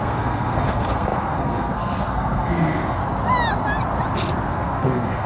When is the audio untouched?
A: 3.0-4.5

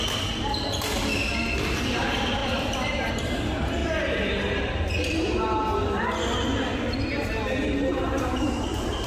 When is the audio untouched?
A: 1.1-1.7; 3.8-7.1

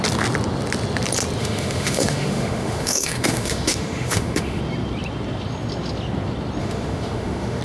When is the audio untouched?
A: 0.0-1.4; 4.6-6.6

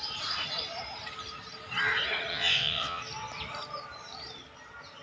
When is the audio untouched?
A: 0.0-2.3; 3.0-5.0

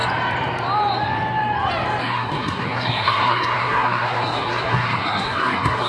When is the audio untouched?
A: 0.0-2.0

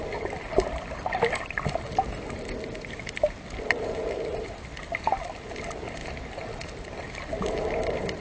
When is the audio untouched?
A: 0.0-8.2